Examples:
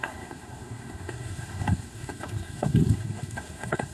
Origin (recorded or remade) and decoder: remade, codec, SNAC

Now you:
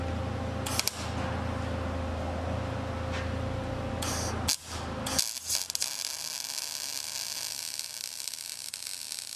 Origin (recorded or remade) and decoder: recorded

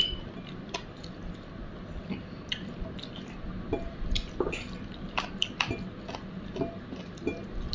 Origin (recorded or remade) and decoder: recorded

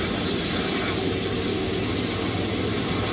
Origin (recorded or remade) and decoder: recorded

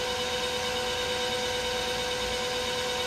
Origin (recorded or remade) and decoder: recorded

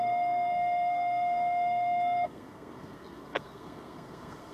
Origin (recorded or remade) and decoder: remade, codec, SNAC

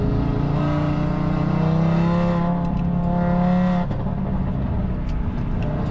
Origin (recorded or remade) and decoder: recorded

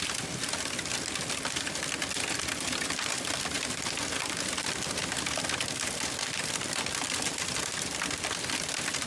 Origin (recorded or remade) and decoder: recorded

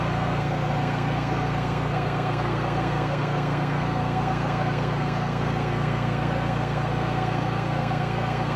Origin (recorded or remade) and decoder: remade, codec, SNAC